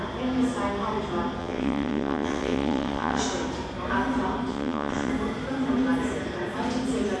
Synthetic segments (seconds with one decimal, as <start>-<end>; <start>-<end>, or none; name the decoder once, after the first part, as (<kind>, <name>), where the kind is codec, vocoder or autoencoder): 1.4-3.2 (vocoder, WaveNeXt); 4.5-5.1